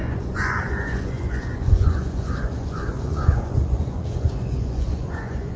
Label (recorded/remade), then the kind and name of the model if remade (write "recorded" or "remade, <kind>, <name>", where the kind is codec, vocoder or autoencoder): remade, vocoder, Vocos